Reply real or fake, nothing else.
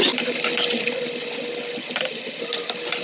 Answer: real